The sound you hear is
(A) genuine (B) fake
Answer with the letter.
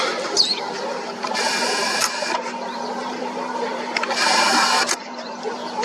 B